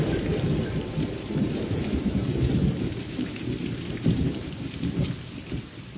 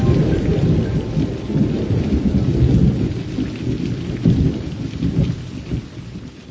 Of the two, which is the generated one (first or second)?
first